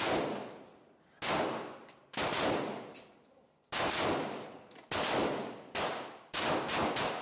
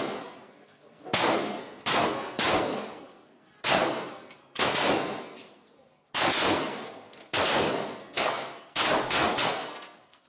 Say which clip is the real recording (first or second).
first